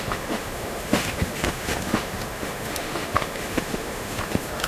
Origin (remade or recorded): remade